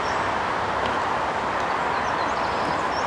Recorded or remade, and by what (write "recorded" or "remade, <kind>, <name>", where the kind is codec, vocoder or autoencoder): recorded